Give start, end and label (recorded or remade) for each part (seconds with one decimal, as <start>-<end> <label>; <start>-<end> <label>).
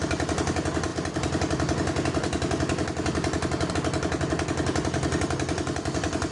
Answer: 0.0-6.3 recorded